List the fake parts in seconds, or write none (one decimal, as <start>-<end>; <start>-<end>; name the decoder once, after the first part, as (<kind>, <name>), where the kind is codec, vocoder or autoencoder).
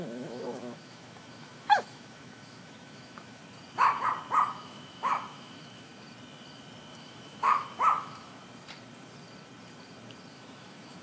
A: 0.0-3.4 (autoencoder, DAC-VAE); 4.5-5.9; 6.9-8.4; 10.3-11.0